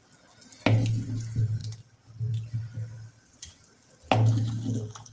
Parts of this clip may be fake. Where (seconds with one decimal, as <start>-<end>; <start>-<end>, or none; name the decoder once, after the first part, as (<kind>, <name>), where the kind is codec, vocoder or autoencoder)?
none